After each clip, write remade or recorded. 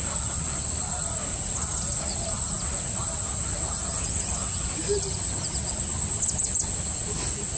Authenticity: recorded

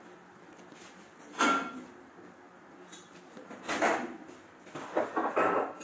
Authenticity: recorded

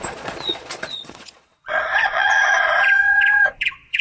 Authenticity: remade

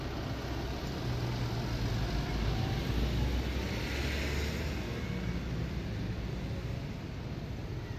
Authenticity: recorded